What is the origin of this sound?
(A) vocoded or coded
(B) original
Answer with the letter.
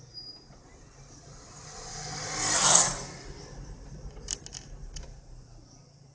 B